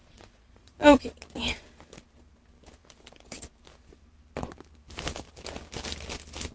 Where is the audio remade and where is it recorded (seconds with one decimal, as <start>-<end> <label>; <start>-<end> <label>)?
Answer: 0.0-1.0 remade; 1.0-6.5 recorded